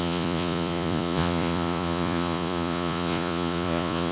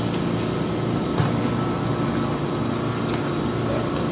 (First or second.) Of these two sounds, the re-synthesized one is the first